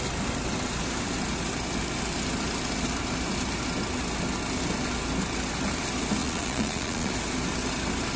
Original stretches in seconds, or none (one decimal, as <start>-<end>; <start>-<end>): 0.0-6.2; 7.1-8.2